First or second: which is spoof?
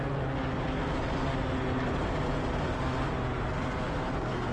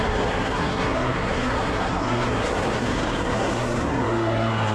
second